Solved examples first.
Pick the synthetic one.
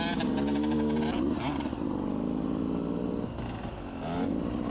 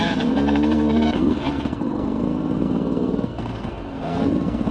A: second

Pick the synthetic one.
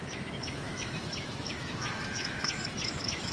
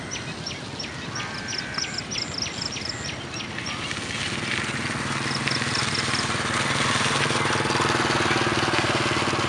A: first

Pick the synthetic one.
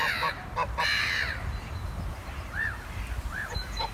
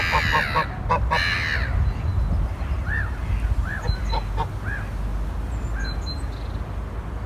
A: first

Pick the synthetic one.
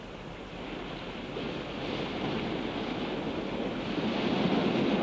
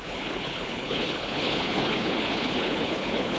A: second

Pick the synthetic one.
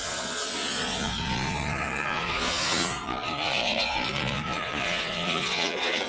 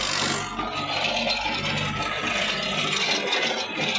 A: first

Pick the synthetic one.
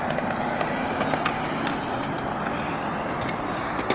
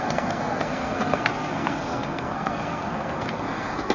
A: second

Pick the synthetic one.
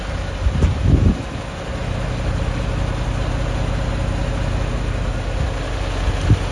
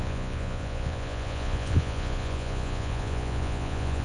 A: second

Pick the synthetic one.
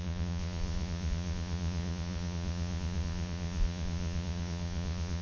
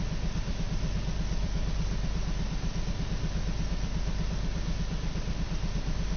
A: first